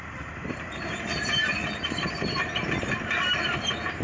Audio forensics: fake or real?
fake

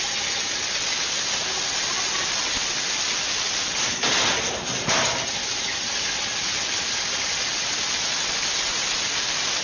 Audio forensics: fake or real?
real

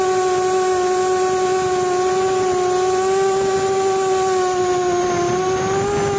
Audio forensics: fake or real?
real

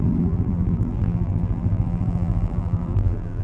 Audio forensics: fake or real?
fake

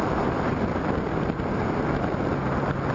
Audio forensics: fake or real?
real